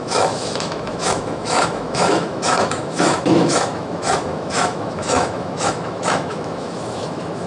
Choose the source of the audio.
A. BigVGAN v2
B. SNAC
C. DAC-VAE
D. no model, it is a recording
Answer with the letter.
C